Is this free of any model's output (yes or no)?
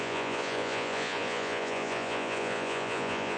no